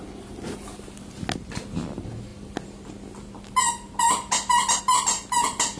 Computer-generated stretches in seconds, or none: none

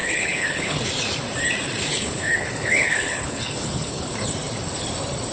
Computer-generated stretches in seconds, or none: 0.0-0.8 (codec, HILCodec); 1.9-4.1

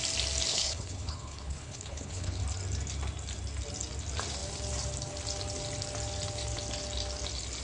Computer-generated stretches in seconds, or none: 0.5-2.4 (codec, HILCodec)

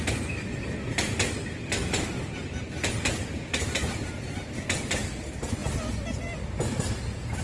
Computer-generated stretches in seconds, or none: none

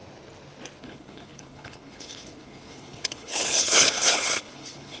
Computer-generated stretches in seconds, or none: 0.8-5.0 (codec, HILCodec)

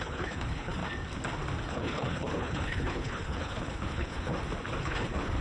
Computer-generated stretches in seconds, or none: 0.0-0.8 (codec, HILCodec); 1.7-4.3; 4.8-5.4